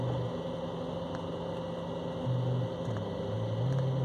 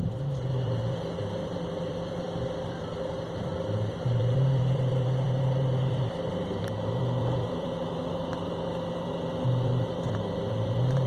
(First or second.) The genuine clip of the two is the first